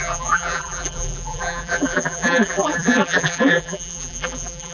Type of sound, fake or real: fake